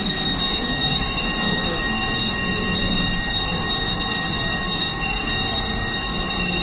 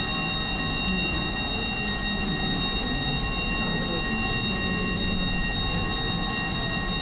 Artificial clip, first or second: first